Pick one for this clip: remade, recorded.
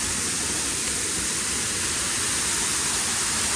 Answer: recorded